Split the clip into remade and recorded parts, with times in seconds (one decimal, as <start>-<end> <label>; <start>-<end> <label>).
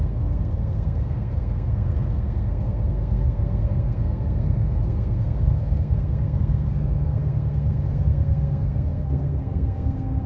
0.0-10.3 remade